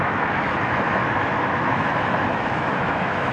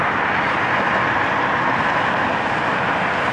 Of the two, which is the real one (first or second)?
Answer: second